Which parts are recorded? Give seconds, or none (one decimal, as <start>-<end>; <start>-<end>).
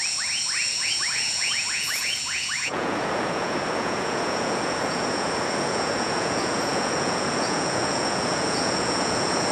none